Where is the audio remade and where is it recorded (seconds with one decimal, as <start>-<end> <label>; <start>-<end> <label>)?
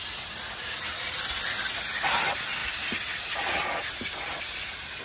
0.0-5.0 recorded